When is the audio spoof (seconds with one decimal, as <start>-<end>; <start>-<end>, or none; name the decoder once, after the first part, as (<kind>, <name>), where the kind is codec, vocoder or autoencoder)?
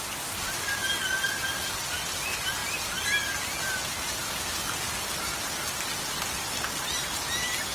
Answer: none